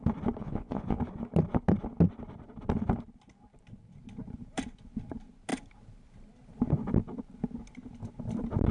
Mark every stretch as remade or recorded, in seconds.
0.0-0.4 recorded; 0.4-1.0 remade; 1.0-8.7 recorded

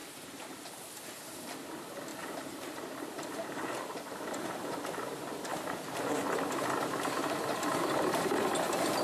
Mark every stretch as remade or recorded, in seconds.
0.0-0.9 remade; 0.9-2.1 recorded; 2.1-6.2 remade; 6.2-9.0 recorded

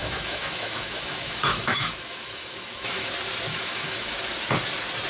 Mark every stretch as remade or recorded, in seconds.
0.0-3.1 remade; 3.1-3.5 recorded; 3.5-4.1 remade; 4.1-5.1 recorded

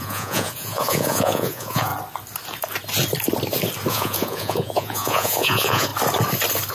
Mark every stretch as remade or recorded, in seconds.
0.0-1.9 remade; 1.9-3.9 recorded; 3.9-5.9 remade; 5.9-6.7 recorded

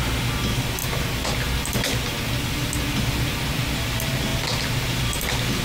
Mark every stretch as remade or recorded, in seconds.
0.0-5.6 recorded

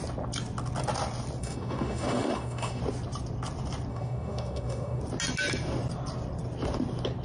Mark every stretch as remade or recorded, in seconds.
0.0-1.4 recorded; 1.4-2.8 remade; 2.8-3.9 recorded; 3.9-5.0 remade; 5.0-7.2 recorded

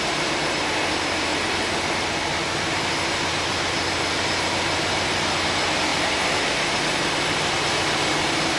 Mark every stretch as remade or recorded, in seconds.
0.0-1.3 recorded; 1.3-2.8 remade; 2.8-5.9 recorded; 5.9-7.5 remade; 7.5-8.6 recorded